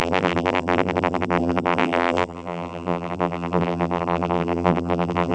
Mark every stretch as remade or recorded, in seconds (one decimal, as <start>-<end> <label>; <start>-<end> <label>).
0.0-5.3 remade

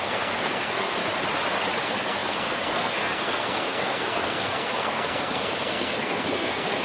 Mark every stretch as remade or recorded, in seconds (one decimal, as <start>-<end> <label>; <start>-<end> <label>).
0.0-1.0 remade; 1.0-1.8 recorded; 1.8-6.8 remade

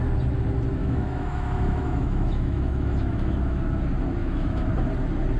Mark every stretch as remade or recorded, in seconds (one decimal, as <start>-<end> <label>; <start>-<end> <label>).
0.0-0.8 recorded; 0.8-3.6 remade; 3.6-4.2 recorded; 4.2-4.7 remade; 4.7-5.4 recorded

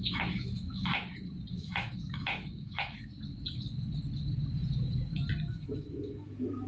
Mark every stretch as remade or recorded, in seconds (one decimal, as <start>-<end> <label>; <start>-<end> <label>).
0.0-1.0 remade; 1.0-1.5 recorded; 1.5-3.1 remade; 3.1-5.5 recorded; 5.5-6.7 remade

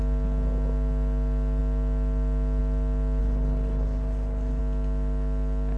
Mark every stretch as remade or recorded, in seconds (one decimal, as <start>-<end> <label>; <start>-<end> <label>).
0.0-3.2 recorded; 3.2-4.6 remade; 4.6-5.8 recorded

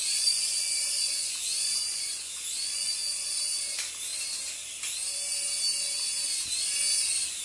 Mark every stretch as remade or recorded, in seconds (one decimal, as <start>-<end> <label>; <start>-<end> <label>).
0.0-3.4 remade; 3.4-7.4 recorded

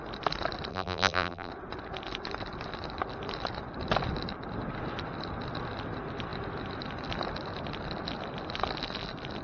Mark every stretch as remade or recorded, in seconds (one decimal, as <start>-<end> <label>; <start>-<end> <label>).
0.0-0.7 recorded; 0.7-1.5 remade; 1.5-9.4 recorded